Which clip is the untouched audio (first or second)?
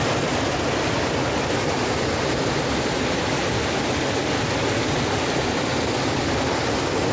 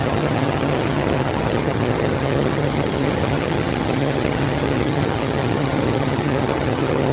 first